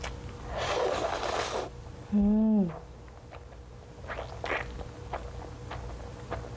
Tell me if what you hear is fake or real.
real